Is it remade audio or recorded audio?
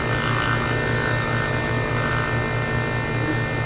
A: recorded